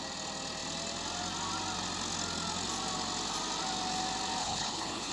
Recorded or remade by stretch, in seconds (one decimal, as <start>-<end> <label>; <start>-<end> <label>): 0.0-4.4 recorded; 4.4-5.1 remade